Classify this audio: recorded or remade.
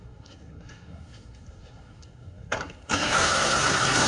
remade